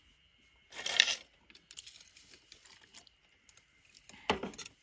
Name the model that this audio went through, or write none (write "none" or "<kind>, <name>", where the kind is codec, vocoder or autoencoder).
none